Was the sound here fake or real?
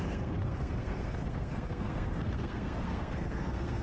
fake